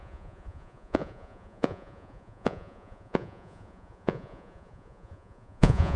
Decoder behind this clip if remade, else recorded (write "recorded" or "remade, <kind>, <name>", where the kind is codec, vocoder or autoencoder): remade, vocoder, Vocos